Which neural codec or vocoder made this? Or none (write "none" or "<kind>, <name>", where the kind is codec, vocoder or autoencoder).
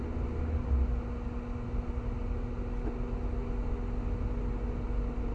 none